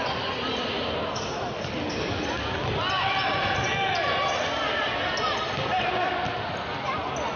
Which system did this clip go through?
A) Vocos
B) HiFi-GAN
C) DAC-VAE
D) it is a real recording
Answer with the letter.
D